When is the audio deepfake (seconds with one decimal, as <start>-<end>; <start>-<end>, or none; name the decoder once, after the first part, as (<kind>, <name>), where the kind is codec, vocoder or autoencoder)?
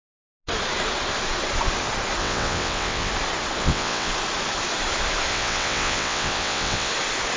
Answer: 2.2-3.1 (vocoder, WaveNeXt); 3.6-4.1; 5.3-6.9